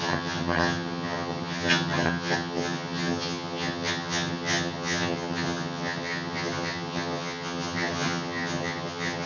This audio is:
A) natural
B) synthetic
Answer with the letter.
B